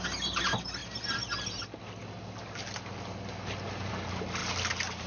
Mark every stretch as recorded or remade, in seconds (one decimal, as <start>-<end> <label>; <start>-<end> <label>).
0.0-5.1 recorded